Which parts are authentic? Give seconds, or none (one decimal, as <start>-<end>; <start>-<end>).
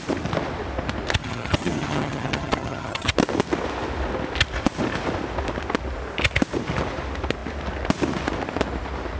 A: 0.0-1.2; 3.1-9.2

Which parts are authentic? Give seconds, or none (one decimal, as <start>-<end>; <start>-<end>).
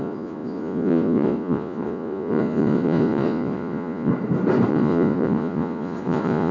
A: 4.1-4.7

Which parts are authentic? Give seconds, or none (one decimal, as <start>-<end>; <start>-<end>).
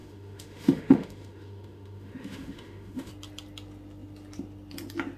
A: 3.1-5.2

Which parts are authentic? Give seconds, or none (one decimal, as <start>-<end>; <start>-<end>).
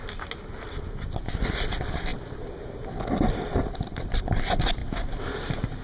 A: 0.0-5.8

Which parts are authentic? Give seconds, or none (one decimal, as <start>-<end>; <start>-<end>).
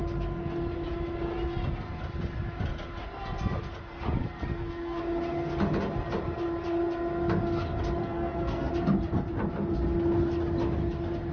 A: 0.0-4.5; 5.0-8.0; 8.7-11.3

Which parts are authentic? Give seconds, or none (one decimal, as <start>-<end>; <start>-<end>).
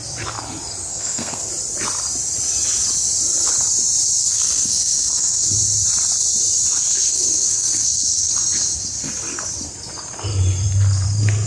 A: 0.0-0.9; 1.5-4.2; 5.5-6.9; 8.3-11.5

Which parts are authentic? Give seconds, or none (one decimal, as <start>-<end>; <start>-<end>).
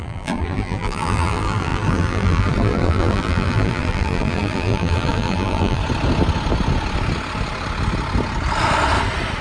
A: 5.8-9.4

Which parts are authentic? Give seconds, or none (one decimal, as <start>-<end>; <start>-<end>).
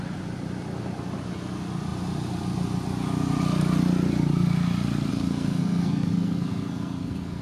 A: 0.0-5.1